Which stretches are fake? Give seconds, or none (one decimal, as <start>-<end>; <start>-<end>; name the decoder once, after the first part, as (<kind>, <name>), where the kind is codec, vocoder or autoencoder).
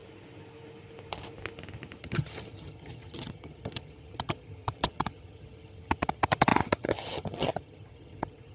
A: 2.0-8.5 (vocoder, HiFi-GAN)